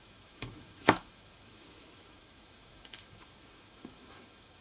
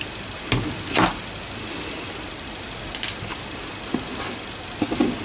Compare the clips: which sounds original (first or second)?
second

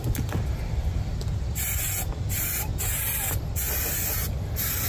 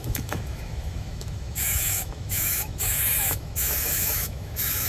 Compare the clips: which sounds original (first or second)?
first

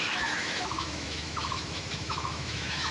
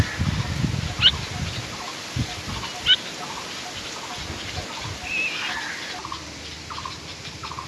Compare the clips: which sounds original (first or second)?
second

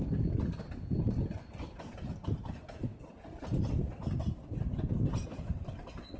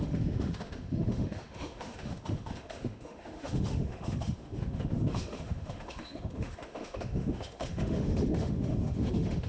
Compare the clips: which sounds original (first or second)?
first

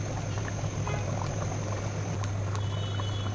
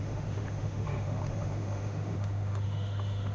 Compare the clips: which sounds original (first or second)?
first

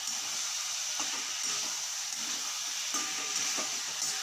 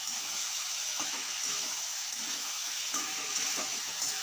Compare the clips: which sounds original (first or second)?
first